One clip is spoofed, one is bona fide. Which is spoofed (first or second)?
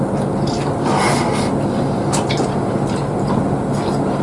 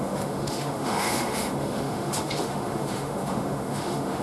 second